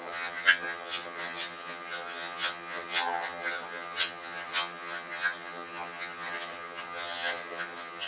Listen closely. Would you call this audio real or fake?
fake